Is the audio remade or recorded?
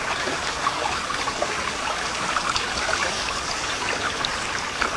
remade